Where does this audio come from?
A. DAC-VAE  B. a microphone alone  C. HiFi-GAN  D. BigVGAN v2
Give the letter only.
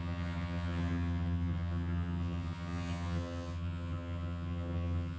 C